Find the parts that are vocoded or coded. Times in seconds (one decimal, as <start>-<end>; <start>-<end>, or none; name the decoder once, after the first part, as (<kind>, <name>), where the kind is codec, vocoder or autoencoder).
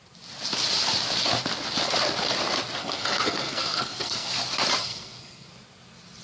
2.8-4.3 (codec, SNAC); 4.8-5.5